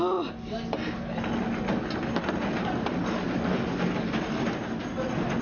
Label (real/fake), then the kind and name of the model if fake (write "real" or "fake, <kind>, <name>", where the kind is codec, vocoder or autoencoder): real